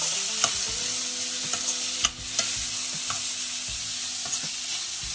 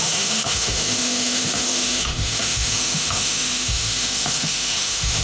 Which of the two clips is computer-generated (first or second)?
second